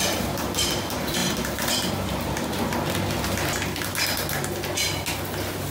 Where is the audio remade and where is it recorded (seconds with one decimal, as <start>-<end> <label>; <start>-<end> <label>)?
0.0-2.7 remade; 2.7-5.7 recorded